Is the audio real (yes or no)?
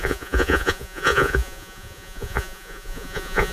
no